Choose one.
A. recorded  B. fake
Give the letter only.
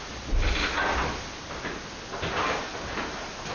A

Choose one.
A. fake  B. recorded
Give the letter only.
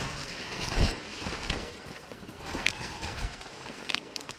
A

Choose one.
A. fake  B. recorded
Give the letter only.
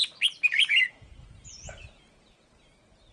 B